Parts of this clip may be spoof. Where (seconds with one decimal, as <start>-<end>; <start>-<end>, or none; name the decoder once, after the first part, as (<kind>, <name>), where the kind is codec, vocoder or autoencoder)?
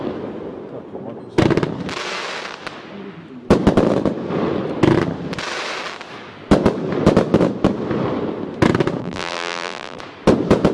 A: 9.0-10.0 (vocoder, BigVGAN v2)